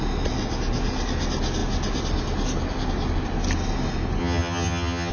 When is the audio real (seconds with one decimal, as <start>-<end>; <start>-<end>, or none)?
0.0-4.2